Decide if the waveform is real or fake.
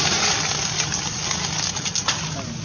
real